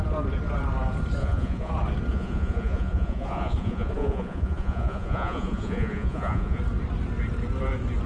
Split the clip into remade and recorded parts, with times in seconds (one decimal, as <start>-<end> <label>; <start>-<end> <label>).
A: 0.0-1.2 recorded; 1.2-1.7 remade; 1.7-2.1 recorded; 2.1-6.6 remade; 6.6-8.1 recorded